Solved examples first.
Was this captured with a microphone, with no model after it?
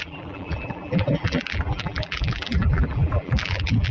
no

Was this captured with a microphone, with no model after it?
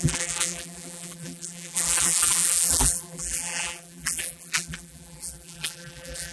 no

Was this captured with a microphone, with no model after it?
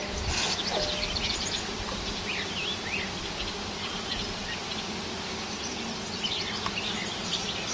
yes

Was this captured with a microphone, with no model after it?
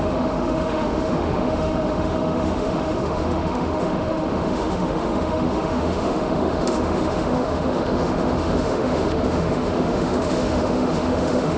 no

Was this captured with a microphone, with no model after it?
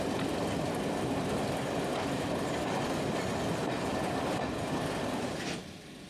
yes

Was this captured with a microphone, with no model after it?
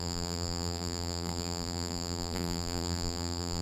no